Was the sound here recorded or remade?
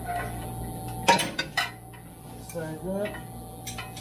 recorded